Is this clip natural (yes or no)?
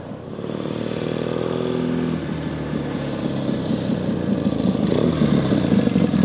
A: yes